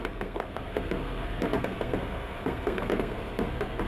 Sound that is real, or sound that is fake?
fake